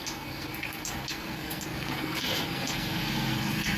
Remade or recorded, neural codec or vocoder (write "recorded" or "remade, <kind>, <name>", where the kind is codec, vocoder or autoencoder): remade, codec, SNAC